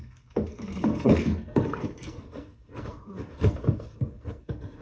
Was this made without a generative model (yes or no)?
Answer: no